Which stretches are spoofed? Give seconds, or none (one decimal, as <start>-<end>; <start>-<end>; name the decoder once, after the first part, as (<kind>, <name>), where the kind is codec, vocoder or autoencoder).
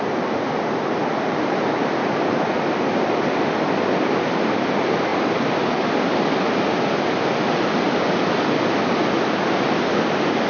none